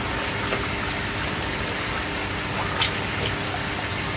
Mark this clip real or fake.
real